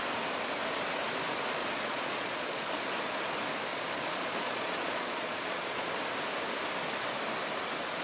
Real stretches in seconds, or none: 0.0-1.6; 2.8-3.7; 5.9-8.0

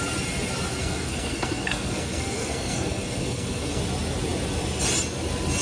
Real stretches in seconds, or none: 0.0-0.8; 3.8-5.6